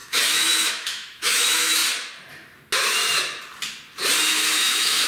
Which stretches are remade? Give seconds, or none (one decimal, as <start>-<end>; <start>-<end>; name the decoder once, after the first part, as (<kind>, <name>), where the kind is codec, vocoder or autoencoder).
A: 0.0-1.8 (autoencoder, DAC-VAE); 4.3-5.1